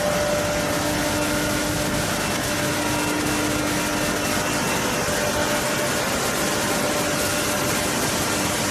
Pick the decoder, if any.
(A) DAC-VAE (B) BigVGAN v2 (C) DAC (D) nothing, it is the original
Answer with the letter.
D